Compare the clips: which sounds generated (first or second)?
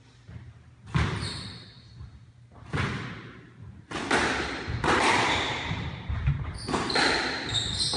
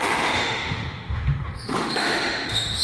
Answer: second